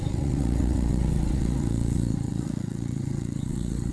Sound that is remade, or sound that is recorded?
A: remade